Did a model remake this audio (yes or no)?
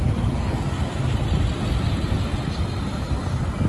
no